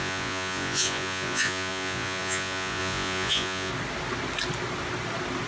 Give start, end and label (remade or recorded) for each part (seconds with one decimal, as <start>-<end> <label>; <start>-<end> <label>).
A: 0.0-3.7 remade; 3.7-5.5 recorded